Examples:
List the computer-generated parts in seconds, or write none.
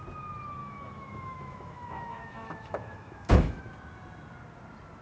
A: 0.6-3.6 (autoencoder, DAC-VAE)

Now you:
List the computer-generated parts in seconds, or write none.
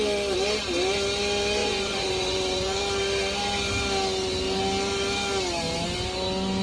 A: 1.6-2.8 (vocoder, Vocos)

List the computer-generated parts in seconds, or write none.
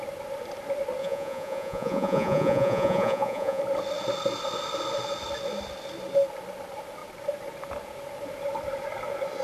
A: 1.0-3.6 (vocoder, Vocos)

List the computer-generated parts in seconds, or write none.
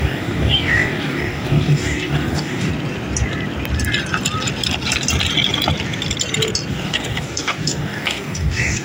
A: 0.0-2.7 (codec, DAC); 6.7-8.8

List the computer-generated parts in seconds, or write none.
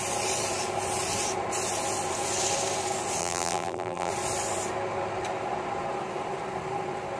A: 3.2-4.1 (vocoder, BigVGAN v2)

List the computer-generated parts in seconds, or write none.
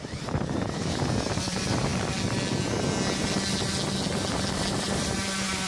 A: 0.0-1.9 (vocoder, BigVGAN v2); 4.8-5.7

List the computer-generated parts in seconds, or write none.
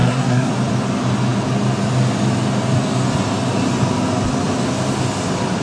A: 0.0-0.5 (codec, SNAC)